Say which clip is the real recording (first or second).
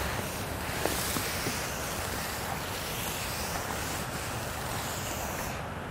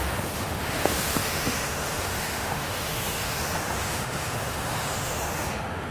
first